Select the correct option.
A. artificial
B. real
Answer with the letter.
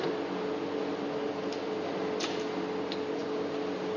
B